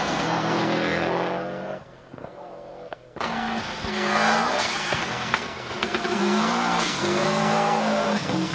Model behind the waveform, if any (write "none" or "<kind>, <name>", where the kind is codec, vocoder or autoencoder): codec, SNAC